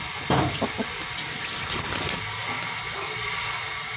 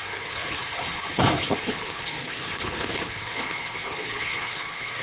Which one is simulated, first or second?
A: second